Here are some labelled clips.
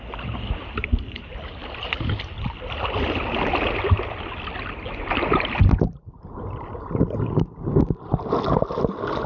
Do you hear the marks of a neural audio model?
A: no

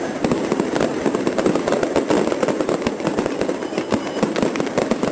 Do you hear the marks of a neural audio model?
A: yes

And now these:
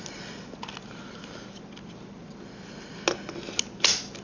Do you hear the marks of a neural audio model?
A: no